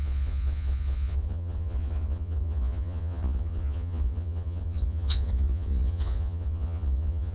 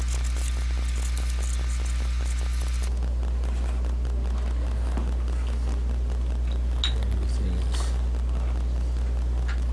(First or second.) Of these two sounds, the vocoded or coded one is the first